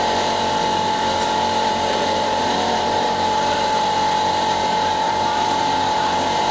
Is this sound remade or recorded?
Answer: remade